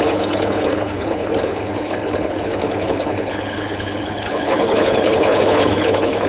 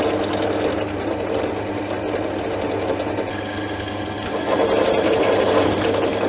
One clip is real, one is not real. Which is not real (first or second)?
first